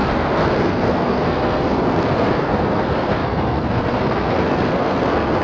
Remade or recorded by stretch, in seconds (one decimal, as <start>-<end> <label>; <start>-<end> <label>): 0.0-5.4 remade